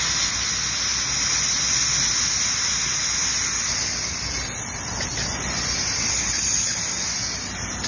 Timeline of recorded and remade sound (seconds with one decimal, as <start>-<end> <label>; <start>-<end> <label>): 0.0-7.9 recorded